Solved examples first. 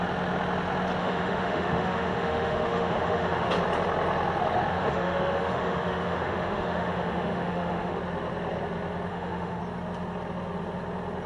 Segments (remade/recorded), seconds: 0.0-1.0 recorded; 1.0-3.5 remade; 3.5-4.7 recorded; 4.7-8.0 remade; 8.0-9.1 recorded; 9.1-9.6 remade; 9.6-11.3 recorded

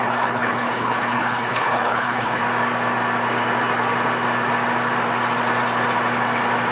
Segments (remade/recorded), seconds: 0.0-2.4 remade; 2.4-6.7 recorded

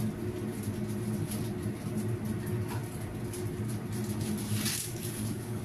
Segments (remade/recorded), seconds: 0.0-4.7 recorded; 4.7-5.6 remade

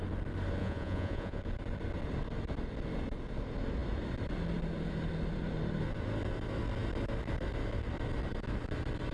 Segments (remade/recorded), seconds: 0.0-0.6 recorded; 0.6-1.4 remade; 1.4-9.1 recorded

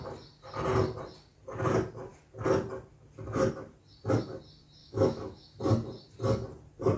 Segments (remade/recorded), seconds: 0.0-4.8 recorded; 4.8-5.6 remade; 5.6-7.0 recorded

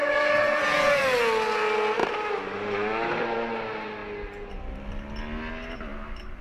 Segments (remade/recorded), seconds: 0.0-0.6 remade; 0.6-6.4 recorded

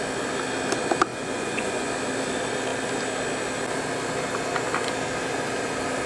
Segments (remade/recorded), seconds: 0.0-1.1 recorded; 1.1-1.9 remade; 1.9-6.1 recorded